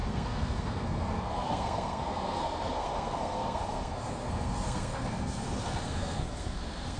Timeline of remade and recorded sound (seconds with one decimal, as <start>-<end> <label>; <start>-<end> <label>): 0.0-7.0 remade